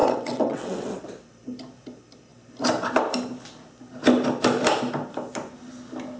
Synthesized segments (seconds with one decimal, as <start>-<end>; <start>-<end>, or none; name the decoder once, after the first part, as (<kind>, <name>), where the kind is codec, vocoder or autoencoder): 0.0-1.0 (vocoder, WaveNeXt)